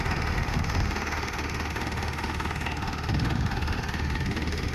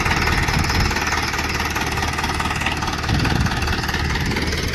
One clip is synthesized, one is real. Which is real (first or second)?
second